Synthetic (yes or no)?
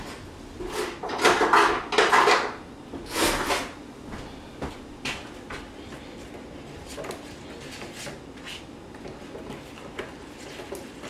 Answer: no